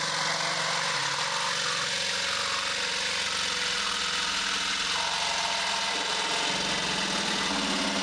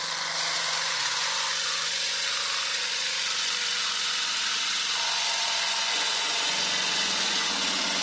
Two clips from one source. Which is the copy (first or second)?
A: second